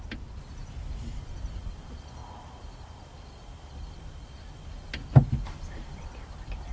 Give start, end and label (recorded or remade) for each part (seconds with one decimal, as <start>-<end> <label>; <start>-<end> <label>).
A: 0.0-2.2 recorded; 2.2-4.5 remade; 4.5-6.7 recorded